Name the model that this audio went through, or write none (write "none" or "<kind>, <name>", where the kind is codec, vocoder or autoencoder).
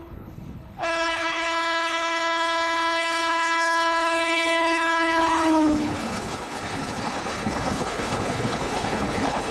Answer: codec, HILCodec